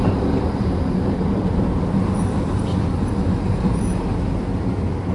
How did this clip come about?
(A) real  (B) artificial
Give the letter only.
A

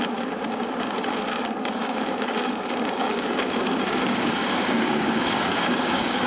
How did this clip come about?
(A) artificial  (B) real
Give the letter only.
A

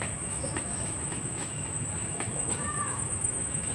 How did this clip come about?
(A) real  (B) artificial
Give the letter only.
B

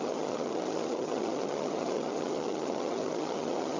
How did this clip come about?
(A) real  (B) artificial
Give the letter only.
B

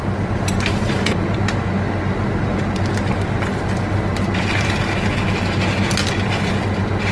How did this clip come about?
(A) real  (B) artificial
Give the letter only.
A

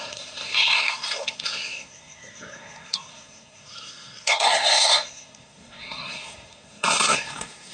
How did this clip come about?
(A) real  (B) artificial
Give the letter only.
B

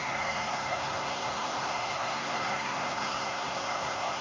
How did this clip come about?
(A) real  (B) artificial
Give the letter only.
B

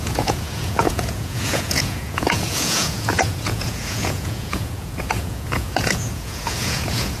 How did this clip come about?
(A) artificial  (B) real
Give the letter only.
A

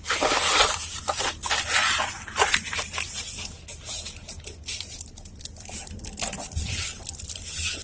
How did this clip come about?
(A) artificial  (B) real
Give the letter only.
B